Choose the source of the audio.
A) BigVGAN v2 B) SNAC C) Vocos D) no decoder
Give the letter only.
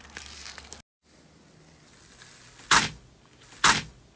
D